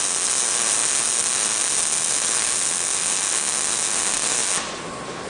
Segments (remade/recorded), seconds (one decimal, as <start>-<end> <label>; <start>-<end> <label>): 0.0-5.3 recorded